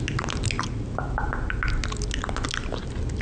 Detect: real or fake real